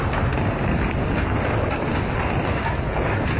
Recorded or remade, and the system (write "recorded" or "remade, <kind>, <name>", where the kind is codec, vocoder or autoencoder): recorded